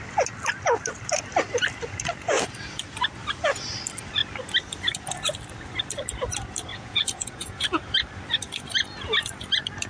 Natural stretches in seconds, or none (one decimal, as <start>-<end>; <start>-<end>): 0.0-6.7; 7.8-9.9